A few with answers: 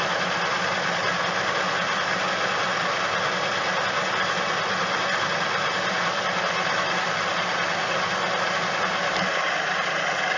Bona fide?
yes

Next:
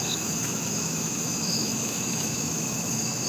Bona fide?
no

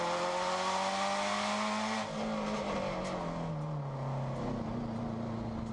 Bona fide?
yes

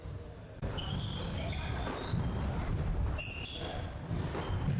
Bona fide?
yes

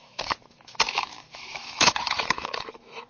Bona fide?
no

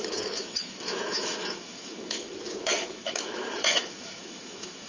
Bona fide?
no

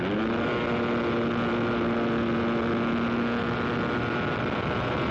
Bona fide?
yes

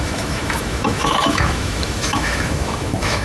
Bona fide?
no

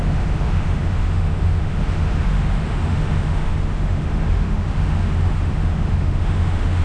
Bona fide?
no